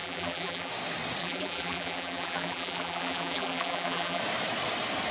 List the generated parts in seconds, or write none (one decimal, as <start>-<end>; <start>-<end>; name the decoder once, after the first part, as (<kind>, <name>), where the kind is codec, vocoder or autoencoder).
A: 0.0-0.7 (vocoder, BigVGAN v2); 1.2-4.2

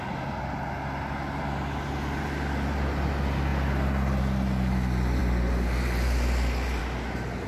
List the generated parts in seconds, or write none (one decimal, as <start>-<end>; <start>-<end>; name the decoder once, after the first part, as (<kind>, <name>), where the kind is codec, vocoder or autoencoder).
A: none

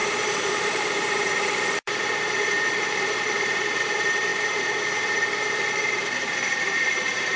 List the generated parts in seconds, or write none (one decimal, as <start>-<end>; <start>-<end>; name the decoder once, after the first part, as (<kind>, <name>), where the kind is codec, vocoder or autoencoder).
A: 0.0-7.4 (vocoder, BigVGAN v2)

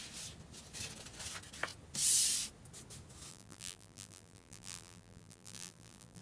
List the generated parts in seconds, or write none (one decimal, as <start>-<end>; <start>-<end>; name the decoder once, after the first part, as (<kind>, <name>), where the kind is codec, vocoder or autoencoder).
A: 3.3-6.2 (vocoder, BigVGAN v2)

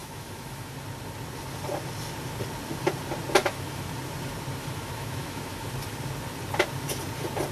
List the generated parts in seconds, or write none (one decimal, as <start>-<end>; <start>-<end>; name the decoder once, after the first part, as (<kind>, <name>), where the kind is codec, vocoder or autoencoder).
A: 0.0-0.7 (autoencoder, DAC-VAE); 3.4-3.9; 4.6-5.7

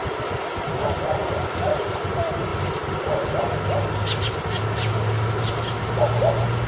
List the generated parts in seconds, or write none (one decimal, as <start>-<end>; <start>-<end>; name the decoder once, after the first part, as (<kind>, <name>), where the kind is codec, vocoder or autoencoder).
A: none